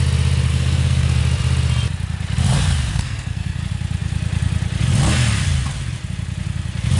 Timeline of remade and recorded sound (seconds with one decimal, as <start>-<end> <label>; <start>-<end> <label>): 0.0-0.5 recorded; 0.5-1.2 remade; 1.2-2.9 recorded; 2.9-3.6 remade; 3.6-7.0 recorded